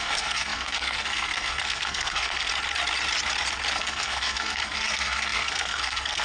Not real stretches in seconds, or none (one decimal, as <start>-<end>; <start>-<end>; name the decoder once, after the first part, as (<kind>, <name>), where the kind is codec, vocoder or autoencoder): 0.0-2.5 (codec, SNAC); 3.7-6.2